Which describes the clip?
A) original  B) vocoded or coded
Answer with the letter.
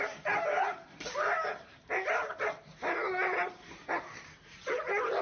B